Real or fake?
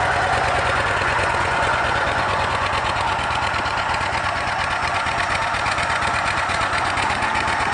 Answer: fake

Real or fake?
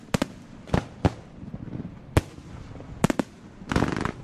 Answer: real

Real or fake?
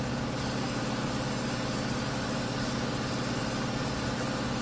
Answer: real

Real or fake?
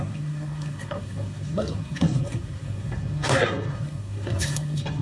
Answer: fake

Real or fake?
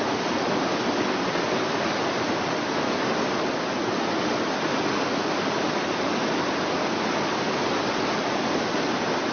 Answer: real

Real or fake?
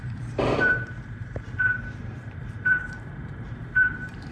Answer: fake